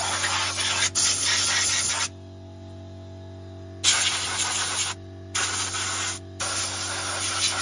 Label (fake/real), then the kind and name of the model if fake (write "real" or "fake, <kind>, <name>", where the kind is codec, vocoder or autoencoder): real